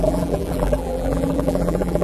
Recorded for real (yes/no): no